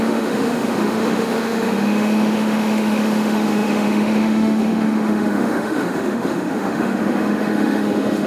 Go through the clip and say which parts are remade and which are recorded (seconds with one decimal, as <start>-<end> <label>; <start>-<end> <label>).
0.0-8.3 remade